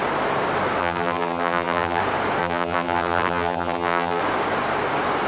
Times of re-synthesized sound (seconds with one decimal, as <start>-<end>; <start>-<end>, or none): 0.8-2.0; 2.4-4.2